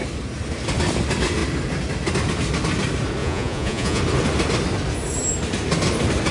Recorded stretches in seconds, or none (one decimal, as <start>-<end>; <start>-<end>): 0.0-3.2; 4.0-6.3